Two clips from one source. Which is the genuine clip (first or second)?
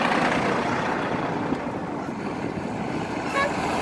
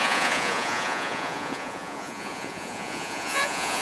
first